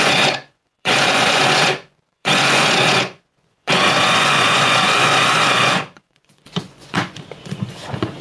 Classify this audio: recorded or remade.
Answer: remade